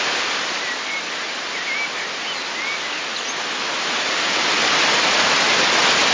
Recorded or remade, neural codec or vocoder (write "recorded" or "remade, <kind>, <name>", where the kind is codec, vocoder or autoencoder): recorded